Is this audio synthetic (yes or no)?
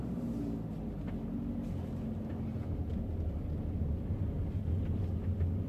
no